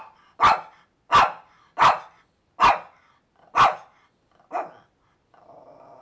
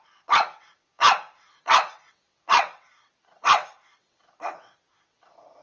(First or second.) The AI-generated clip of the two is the second